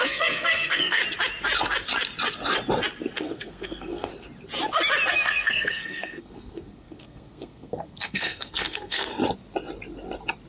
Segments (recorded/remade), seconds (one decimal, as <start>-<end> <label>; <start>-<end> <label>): 0.0-1.0 remade; 1.0-3.2 recorded; 3.2-4.1 remade; 4.1-5.1 recorded; 5.1-9.1 remade; 9.1-10.5 recorded